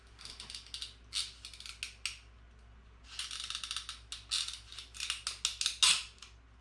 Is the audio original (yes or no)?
yes